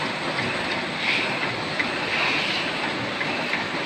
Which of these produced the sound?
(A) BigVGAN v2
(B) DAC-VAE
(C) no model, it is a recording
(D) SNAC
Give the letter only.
C